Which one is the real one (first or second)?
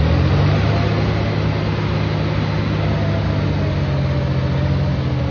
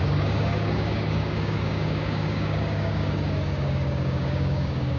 first